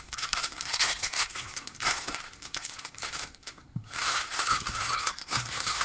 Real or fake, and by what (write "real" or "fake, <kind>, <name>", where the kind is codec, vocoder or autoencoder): fake, codec, SNAC